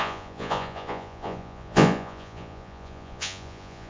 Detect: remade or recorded remade